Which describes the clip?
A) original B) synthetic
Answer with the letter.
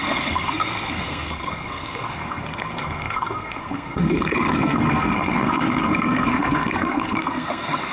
B